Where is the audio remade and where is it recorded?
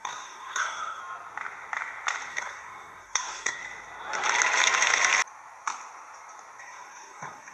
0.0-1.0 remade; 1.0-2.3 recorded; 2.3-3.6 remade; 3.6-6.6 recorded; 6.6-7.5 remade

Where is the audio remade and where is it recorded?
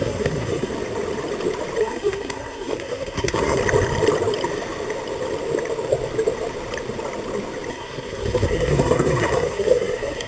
0.0-0.7 remade; 0.7-1.8 recorded; 1.8-3.6 remade; 3.6-7.7 recorded; 7.7-10.3 remade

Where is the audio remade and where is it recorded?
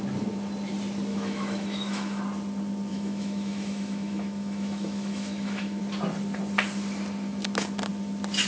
0.0-1.1 recorded; 1.1-2.2 remade; 2.2-2.9 recorded; 2.9-5.8 remade; 5.8-8.5 recorded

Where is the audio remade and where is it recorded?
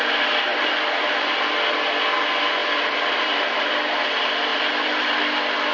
0.0-0.5 recorded; 0.5-1.3 remade; 1.3-2.6 recorded; 2.6-3.7 remade; 3.7-4.5 recorded; 4.5-5.2 remade; 5.2-5.7 recorded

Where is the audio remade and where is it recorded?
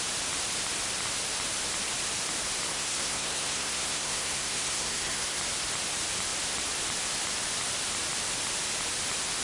0.0-2.7 recorded; 2.7-5.4 remade; 5.4-9.4 recorded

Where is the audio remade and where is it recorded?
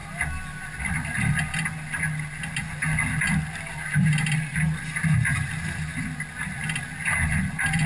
0.0-7.9 recorded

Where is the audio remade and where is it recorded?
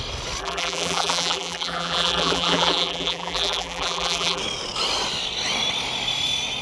0.0-0.4 recorded; 0.4-4.4 remade; 4.4-6.6 recorded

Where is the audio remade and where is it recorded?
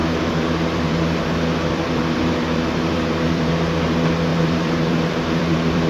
0.0-3.5 remade; 3.5-4.3 recorded; 4.3-5.9 remade